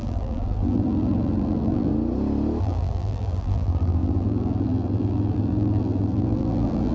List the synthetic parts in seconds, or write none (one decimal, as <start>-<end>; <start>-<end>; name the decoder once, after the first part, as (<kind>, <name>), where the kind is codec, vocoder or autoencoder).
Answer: 0.0-1.9 (vocoder, BigVGAN v2); 2.6-6.9